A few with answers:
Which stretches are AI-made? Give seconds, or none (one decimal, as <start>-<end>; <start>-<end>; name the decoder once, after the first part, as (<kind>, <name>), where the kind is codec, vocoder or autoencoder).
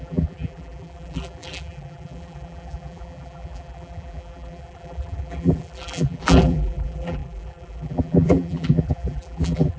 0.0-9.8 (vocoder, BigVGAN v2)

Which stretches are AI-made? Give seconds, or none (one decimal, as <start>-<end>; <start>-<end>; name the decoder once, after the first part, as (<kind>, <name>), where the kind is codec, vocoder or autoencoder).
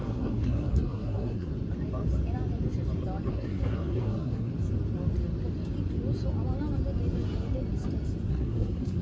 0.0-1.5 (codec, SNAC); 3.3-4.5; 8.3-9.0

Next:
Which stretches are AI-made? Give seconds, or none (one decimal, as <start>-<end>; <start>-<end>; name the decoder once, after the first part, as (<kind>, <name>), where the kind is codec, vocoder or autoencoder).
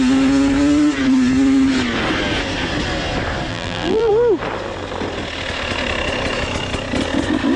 3.5-4.1 (vocoder, BigVGAN v2)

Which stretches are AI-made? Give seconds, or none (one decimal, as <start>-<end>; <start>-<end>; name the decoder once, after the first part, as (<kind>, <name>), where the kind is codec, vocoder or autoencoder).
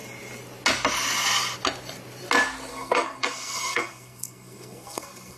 2.7-5.4 (codec, SNAC)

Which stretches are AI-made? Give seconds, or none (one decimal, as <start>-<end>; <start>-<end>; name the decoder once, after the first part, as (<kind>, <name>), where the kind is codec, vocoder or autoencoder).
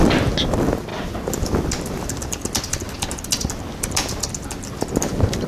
none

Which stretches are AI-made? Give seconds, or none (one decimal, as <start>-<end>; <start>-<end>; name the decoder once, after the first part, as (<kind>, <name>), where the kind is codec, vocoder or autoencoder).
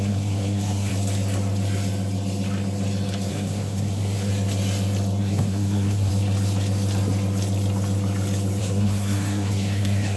0.0-0.9 (codec, SNAC); 3.3-4.3; 5.2-6.1; 8.6-10.2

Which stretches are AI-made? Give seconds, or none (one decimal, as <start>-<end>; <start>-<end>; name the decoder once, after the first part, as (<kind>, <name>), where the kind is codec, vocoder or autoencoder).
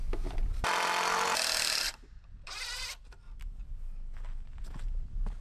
none